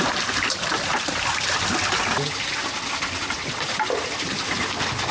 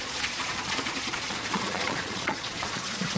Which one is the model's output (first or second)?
second